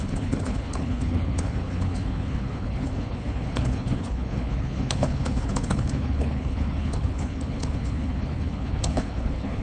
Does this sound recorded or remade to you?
remade